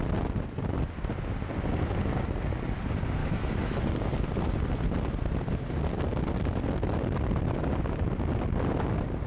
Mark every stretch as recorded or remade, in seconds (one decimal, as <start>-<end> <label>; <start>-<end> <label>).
0.0-3.2 recorded; 3.2-3.9 remade; 3.9-9.3 recorded